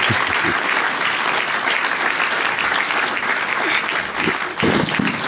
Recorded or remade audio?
recorded